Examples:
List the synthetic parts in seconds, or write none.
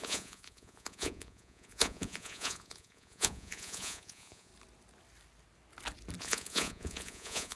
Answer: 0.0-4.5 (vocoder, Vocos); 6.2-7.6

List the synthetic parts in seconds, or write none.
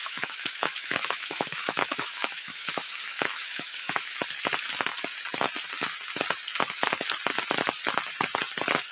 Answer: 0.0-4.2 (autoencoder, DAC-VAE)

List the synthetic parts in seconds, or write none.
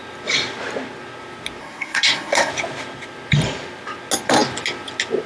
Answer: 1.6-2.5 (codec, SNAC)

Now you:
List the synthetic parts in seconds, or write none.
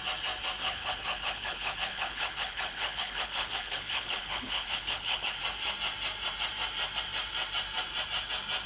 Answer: 0.6-5.4 (codec, HILCodec)